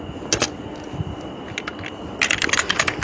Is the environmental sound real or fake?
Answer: real